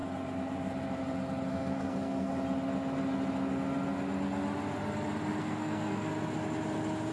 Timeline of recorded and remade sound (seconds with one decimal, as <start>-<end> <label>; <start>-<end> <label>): 0.0-1.5 recorded; 1.5-2.3 remade; 2.3-5.4 recorded; 5.4-6.1 remade; 6.1-7.1 recorded